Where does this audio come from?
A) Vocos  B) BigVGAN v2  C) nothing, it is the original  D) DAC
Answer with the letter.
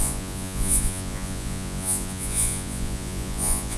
A